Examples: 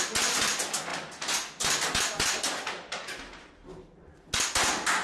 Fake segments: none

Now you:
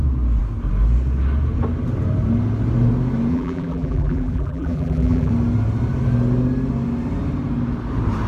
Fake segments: 3.3-5.3 (vocoder, BigVGAN v2)